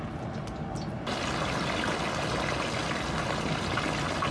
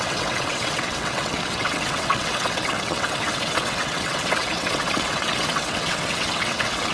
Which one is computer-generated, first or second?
second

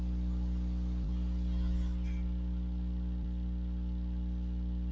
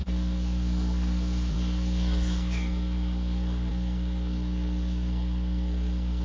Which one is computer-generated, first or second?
second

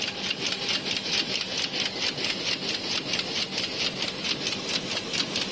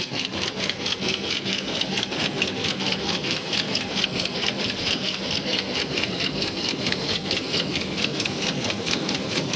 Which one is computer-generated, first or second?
second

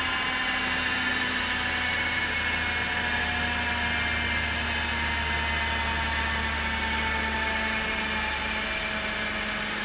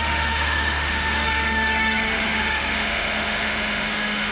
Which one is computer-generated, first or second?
second